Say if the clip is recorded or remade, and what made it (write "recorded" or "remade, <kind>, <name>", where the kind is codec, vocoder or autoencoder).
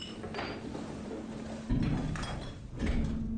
recorded